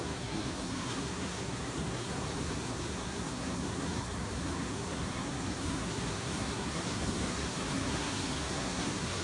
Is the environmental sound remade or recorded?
remade